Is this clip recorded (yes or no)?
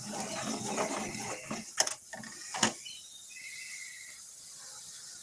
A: yes